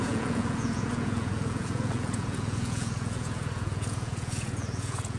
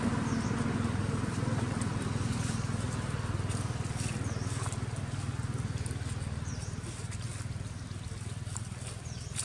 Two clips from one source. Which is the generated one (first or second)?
first